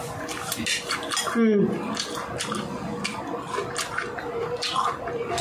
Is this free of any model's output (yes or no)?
yes